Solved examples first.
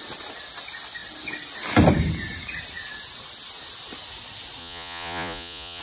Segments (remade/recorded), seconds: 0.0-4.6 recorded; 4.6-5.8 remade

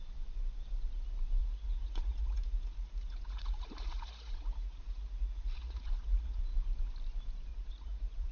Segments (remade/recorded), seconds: 0.0-1.4 recorded; 1.4-6.4 remade; 6.4-7.5 recorded; 7.5-8.3 remade

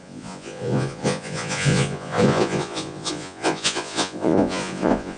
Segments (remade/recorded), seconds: 0.0-5.2 remade

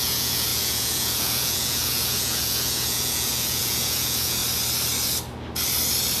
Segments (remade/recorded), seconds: 0.0-4.4 remade; 4.4-6.2 recorded

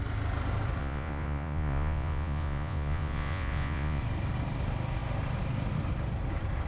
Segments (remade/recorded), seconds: 0.0-0.8 recorded; 0.8-4.0 remade; 4.0-6.7 recorded

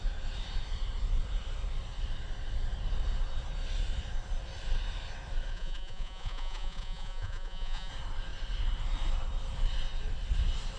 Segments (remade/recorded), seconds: 0.0-5.5 recorded; 5.5-7.9 remade; 7.9-10.8 recorded

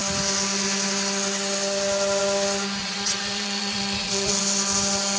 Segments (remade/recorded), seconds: 0.0-2.8 recorded; 2.8-4.4 remade; 4.4-5.2 recorded